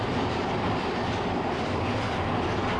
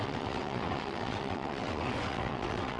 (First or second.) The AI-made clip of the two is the second